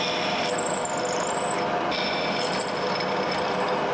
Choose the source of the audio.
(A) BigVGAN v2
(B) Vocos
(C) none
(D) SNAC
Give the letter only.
C